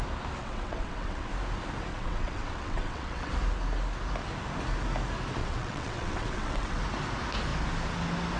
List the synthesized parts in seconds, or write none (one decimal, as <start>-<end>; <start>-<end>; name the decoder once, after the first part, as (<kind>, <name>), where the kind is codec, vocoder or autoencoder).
0.4-1.3 (vocoder, WaveNeXt); 1.9-3.3; 5.4-6.8